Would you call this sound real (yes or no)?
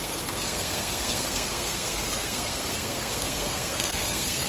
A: no